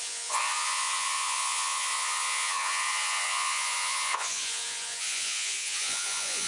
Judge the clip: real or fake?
fake